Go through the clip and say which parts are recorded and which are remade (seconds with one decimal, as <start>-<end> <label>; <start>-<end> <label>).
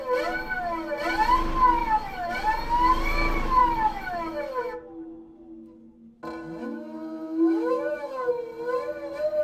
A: 0.0-1.8 recorded; 1.8-2.3 remade; 2.3-3.6 recorded; 3.6-4.6 remade; 4.6-6.6 recorded; 6.6-8.3 remade; 8.3-9.4 recorded